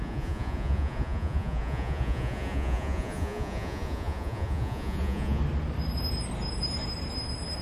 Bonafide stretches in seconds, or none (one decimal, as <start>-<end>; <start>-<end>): 5.4-7.6